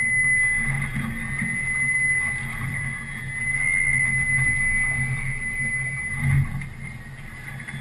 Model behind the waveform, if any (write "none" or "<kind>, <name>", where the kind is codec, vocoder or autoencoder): none